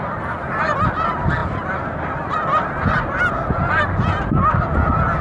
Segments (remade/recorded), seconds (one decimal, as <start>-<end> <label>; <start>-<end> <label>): 0.0-5.2 recorded